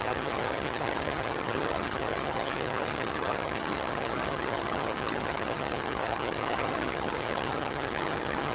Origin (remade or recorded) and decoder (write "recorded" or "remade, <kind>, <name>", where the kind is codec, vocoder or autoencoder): remade, vocoder, HiFi-GAN